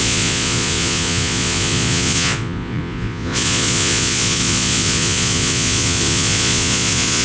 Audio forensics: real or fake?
fake